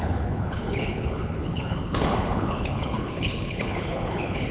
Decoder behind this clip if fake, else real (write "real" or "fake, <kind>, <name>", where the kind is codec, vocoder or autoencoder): fake, codec, HILCodec